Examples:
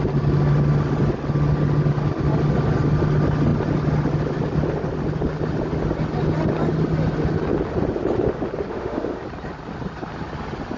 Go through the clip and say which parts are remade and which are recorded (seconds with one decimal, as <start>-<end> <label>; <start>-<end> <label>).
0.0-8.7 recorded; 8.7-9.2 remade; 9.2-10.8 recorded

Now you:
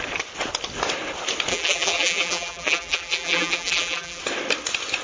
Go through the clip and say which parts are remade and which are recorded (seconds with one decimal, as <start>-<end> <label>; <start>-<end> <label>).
0.0-1.5 recorded; 1.5-4.2 remade; 4.2-5.0 recorded

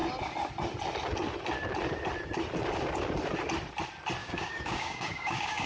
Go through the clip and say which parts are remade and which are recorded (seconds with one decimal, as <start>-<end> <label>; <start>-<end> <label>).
0.0-4.2 recorded; 4.2-5.7 remade

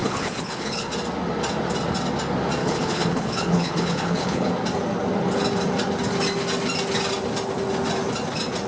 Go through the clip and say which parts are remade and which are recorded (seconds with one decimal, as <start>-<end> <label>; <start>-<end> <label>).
0.0-0.9 remade; 0.9-2.6 recorded; 2.6-4.5 remade; 4.5-8.7 recorded

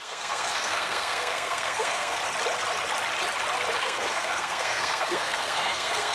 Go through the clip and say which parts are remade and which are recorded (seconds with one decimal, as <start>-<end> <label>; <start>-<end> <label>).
0.0-2.2 remade; 2.2-3.8 recorded; 3.8-6.1 remade

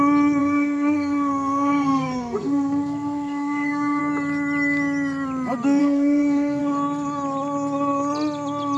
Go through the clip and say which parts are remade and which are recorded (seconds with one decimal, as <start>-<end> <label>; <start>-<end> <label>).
0.0-0.4 recorded; 0.4-4.0 remade; 4.0-5.8 recorded; 5.8-6.6 remade; 6.6-8.8 recorded